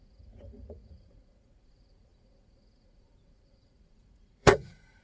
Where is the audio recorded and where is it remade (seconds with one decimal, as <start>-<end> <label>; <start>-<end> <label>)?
0.0-5.0 remade